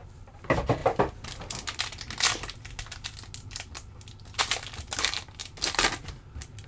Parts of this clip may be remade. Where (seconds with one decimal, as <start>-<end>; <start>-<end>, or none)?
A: none